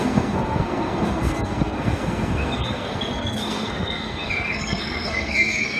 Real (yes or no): no